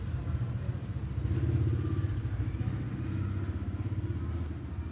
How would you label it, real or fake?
real